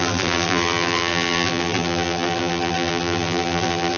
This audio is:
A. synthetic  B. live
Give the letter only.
A